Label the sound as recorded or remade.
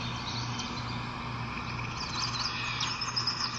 recorded